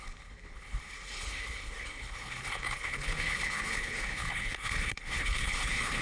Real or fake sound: fake